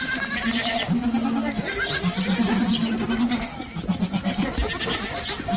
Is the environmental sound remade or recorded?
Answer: recorded